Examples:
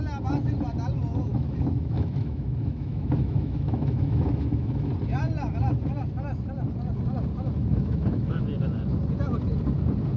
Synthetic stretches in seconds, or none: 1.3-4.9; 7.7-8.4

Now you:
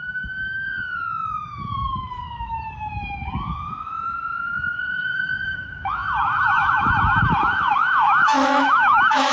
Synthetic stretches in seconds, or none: 0.0-9.3

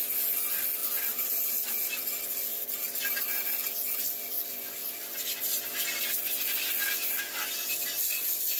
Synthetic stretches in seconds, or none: none